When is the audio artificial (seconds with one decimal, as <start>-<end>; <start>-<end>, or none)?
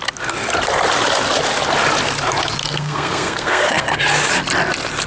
2.6-4.0